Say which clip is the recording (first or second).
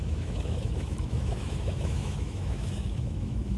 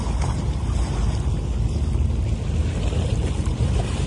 second